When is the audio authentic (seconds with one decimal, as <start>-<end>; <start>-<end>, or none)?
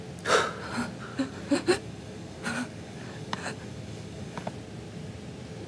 0.0-1.1; 4.5-5.7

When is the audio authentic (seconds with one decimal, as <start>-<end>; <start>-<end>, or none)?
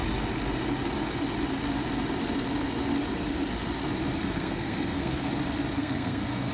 0.0-4.2; 5.3-5.8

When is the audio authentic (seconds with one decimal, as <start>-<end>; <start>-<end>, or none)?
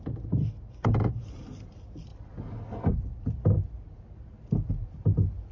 0.0-5.5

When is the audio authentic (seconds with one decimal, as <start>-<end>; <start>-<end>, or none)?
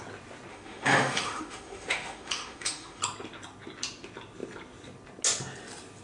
0.0-0.5; 3.0-6.0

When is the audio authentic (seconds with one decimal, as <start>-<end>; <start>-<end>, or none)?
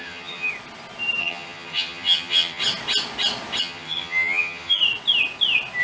0.5-1.2; 2.6-3.6; 4.8-5.8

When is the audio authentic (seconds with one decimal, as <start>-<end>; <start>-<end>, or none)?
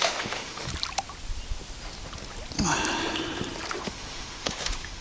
0.7-3.7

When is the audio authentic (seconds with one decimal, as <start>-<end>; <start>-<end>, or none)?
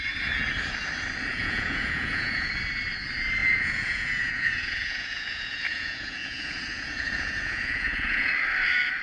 0.0-1.3; 2.5-3.4; 8.3-9.0